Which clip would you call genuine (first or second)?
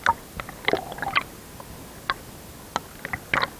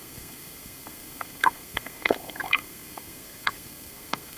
first